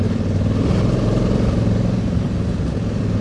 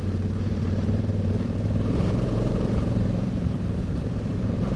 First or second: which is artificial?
second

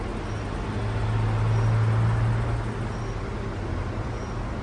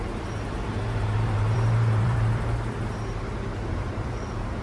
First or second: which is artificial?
second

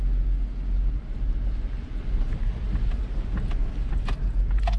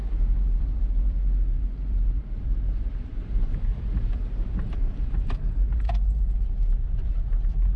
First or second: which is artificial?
second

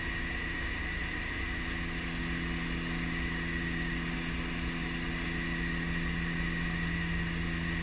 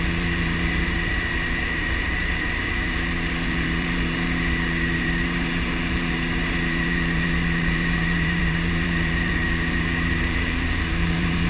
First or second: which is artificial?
second